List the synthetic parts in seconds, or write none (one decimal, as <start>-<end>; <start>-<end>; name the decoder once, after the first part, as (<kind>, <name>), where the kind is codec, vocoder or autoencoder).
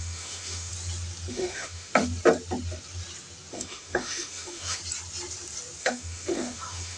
0.0-0.7 (autoencoder, DAC-VAE); 1.3-1.9; 3.5-4.8; 5.8-7.0